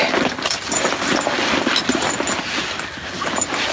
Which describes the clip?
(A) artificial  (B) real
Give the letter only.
B